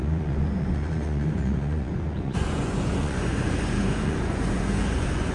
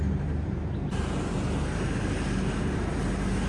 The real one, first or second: second